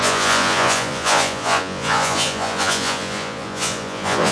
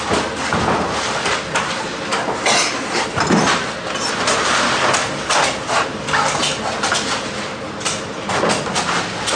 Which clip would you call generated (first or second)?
first